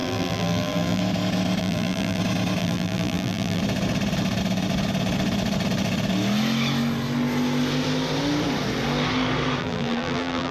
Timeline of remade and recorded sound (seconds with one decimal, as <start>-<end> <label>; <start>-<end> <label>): 0.0-1.0 remade; 1.0-1.6 recorded; 1.6-2.2 remade; 2.2-2.6 recorded; 2.6-3.6 remade; 3.6-9.6 recorded; 9.6-10.5 remade